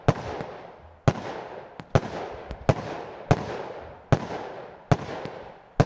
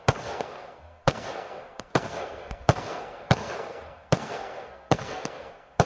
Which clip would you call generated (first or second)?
second